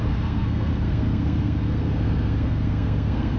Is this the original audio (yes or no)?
no